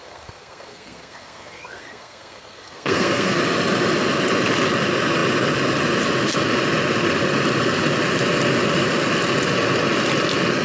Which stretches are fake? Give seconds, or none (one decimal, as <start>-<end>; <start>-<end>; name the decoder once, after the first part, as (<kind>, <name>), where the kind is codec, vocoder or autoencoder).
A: 0.0-3.4 (codec, SNAC)

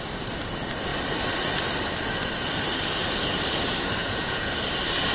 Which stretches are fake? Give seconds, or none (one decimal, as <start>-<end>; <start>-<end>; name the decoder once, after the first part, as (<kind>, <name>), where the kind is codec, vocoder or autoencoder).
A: 4.0-4.5 (vocoder, Vocos)